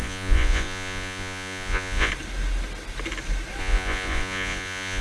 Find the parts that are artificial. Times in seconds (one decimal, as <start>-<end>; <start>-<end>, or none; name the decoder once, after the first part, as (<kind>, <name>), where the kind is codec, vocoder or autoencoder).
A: 0.0-2.1 (vocoder, Vocos); 3.6-5.0